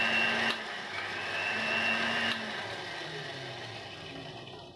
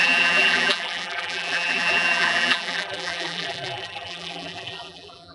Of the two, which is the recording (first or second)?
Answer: first